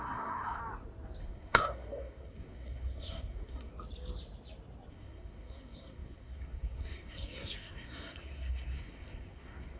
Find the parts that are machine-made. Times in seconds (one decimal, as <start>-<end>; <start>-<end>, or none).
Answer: 0.0-0.6; 1.2-3.7; 4.9-9.8